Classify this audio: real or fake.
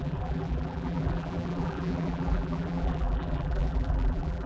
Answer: fake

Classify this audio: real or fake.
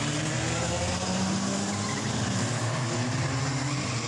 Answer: real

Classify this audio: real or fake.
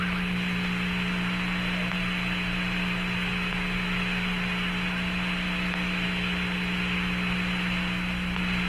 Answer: real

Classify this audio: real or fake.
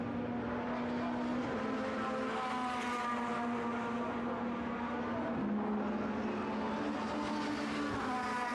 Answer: real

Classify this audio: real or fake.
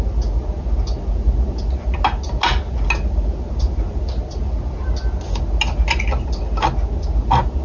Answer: real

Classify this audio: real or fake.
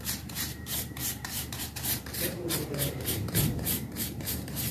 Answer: fake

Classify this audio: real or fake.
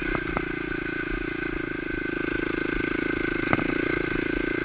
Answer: real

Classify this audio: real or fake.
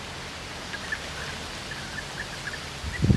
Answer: real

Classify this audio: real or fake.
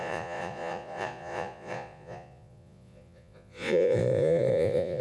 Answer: fake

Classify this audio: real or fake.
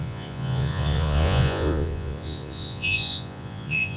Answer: fake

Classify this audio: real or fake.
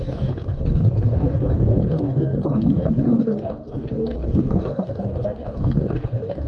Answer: fake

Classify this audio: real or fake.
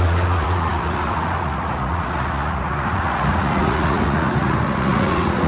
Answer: fake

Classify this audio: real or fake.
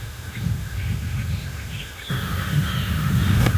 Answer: fake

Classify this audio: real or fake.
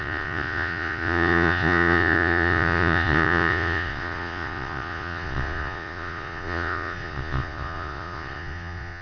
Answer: fake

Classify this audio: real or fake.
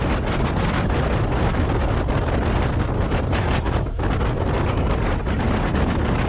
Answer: real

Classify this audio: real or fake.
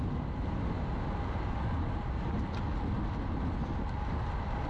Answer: real